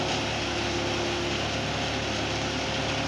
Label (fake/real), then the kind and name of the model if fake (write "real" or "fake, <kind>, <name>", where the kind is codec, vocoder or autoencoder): real